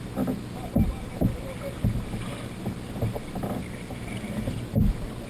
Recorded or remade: recorded